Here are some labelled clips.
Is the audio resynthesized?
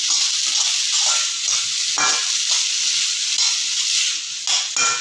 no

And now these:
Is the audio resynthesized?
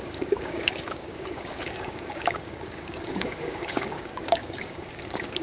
yes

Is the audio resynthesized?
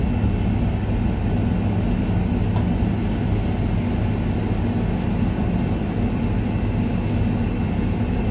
no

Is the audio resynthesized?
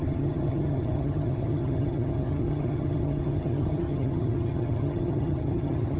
yes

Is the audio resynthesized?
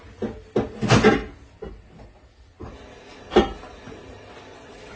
no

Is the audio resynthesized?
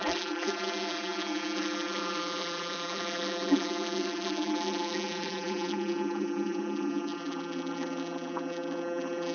yes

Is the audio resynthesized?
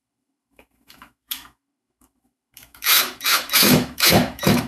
yes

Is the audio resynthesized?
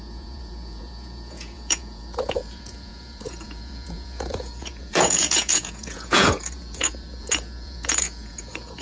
yes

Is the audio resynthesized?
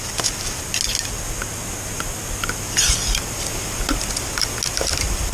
no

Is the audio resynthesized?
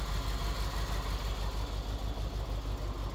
no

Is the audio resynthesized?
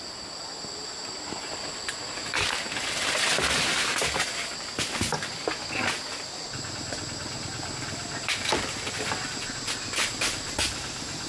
no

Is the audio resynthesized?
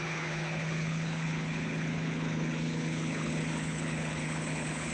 yes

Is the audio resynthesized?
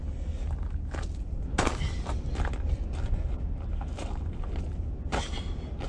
no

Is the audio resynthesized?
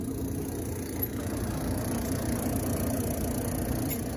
no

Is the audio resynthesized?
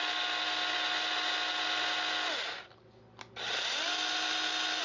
no